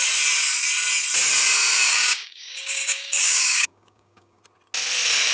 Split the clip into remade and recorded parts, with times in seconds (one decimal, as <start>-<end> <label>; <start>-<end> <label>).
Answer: 0.0-1.9 recorded; 1.9-4.4 remade; 4.4-5.3 recorded